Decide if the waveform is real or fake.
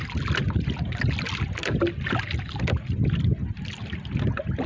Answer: real